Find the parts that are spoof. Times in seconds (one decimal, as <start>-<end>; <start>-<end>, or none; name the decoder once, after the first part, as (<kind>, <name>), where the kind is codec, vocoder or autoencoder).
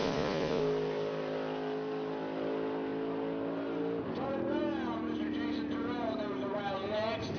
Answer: 0.0-0.6 (vocoder, Vocos)